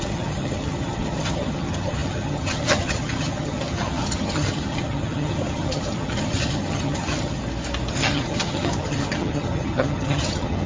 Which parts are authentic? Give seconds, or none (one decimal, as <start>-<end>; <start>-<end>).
7.4-7.9